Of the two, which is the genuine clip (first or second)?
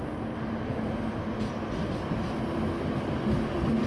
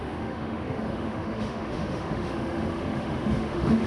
first